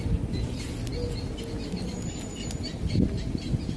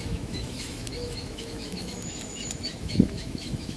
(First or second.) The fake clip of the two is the second